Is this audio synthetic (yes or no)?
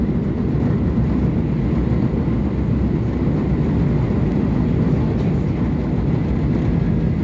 no